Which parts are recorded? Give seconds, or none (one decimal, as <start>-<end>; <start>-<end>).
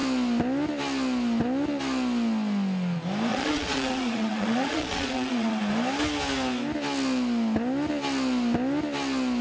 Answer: 0.0-3.3; 5.6-9.4